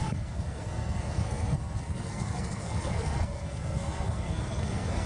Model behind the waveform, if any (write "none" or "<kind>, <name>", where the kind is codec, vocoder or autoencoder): codec, SNAC